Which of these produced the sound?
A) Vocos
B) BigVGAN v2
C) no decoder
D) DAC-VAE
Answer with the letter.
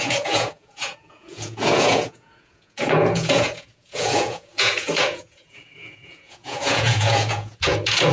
A